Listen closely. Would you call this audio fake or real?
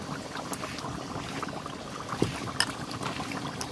real